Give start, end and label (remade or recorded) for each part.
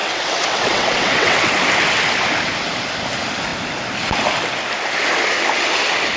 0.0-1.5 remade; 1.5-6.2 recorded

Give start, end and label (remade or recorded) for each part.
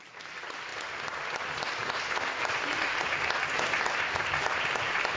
0.0-0.7 remade; 0.7-3.8 recorded; 3.8-5.2 remade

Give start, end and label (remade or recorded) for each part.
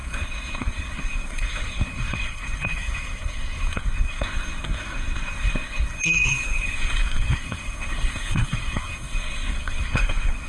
0.0-10.5 remade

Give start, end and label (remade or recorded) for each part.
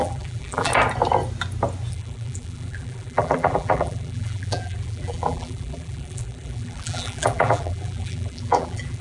0.0-0.7 remade; 0.7-1.9 recorded; 1.9-9.0 remade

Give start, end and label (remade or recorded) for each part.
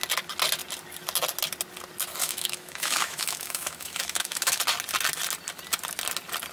0.0-2.2 recorded; 2.2-4.6 remade; 4.6-6.5 recorded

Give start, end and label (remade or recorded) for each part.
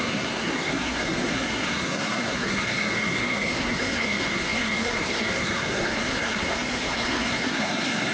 0.0-8.1 remade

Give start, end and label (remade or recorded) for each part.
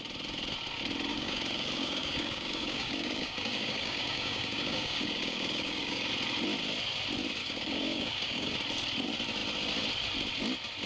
0.0-1.1 recorded; 1.1-6.1 remade; 6.1-7.4 recorded; 7.4-8.6 remade; 8.6-10.9 recorded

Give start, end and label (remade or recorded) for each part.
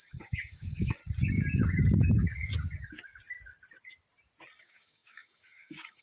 0.0-1.0 remade; 1.0-4.6 recorded; 4.6-6.0 remade